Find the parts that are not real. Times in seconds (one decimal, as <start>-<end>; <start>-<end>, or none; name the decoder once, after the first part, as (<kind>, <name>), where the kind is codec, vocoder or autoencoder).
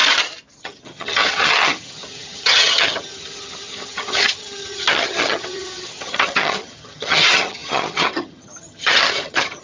0.6-9.6 (vocoder, HiFi-GAN)